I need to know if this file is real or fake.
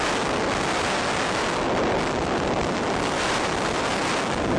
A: real